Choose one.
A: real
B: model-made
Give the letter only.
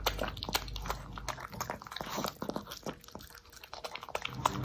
A